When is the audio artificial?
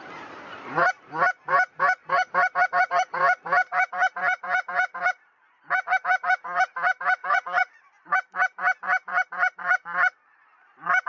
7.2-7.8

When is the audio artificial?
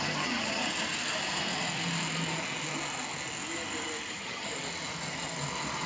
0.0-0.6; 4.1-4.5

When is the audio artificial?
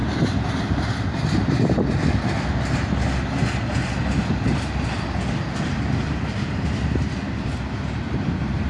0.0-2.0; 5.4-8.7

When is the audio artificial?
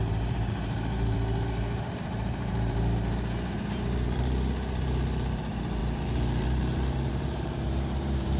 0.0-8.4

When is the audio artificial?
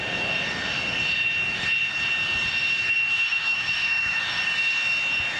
3.3-4.2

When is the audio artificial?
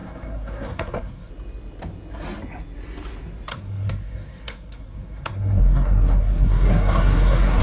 0.0-1.3; 3.5-7.6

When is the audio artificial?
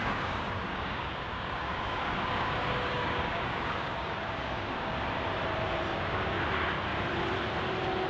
0.0-4.9; 5.9-6.4